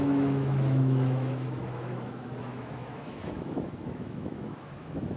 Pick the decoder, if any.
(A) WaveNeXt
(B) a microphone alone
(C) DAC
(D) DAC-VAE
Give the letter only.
D